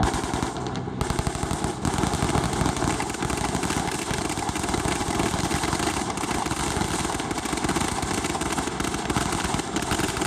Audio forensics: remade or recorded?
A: recorded